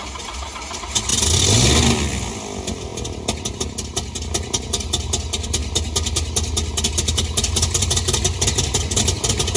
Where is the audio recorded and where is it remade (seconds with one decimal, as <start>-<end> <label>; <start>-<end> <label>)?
0.0-9.6 recorded